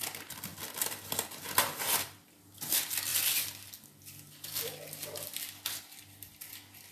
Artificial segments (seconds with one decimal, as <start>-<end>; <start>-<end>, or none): none